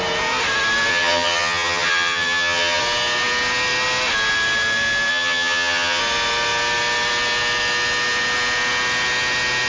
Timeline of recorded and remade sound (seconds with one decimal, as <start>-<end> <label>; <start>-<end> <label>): 0.0-0.9 recorded; 0.9-2.8 remade; 2.8-5.1 recorded; 5.1-6.0 remade; 6.0-9.7 recorded